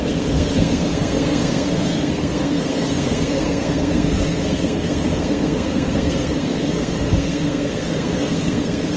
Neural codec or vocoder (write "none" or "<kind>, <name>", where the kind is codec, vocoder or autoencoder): codec, SNAC